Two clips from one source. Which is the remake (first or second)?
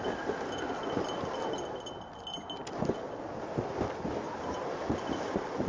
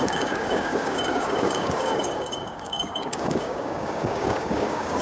second